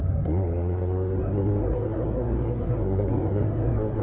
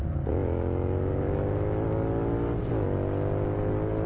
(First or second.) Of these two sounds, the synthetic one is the first